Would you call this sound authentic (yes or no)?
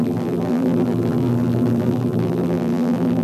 no